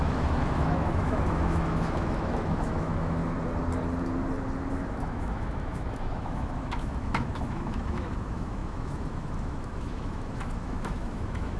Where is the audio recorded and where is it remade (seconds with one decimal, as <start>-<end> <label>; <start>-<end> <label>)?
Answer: 0.0-3.2 remade; 3.2-4.7 recorded; 4.7-11.6 remade